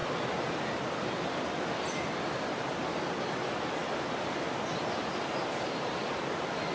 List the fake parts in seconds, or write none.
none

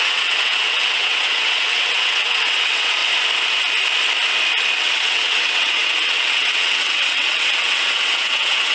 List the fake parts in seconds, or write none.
0.0-3.0 (vocoder, WaveNeXt); 4.7-8.7

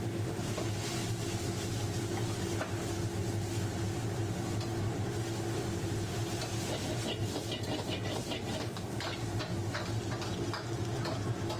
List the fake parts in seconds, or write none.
none

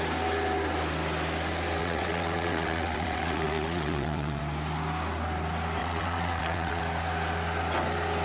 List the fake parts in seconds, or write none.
1.8-4.4 (vocoder, WaveNeXt); 5.8-6.8

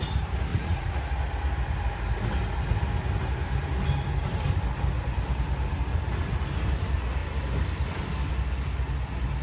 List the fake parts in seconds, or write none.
0.5-1.0 (vocoder, Vocos)